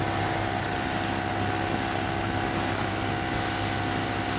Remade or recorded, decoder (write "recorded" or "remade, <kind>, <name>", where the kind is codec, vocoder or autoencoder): recorded